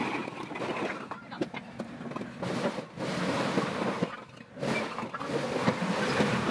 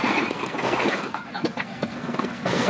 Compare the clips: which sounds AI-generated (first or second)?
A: second